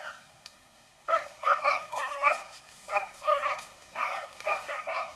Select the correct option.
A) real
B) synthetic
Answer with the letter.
B